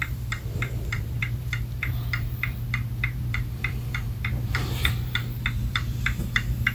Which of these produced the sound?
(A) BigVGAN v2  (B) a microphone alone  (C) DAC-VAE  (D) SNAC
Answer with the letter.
A